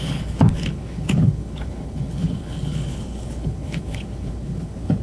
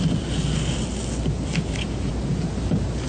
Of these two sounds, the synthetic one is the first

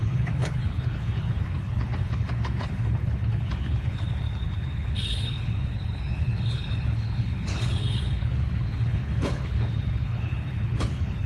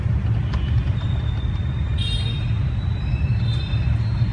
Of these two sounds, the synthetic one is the first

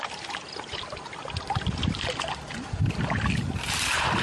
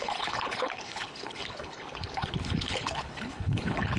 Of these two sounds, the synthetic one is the second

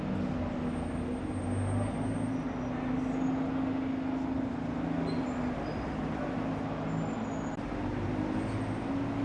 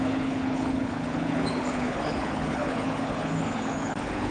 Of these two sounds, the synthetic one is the second